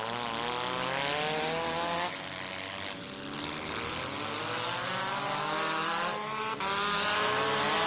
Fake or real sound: real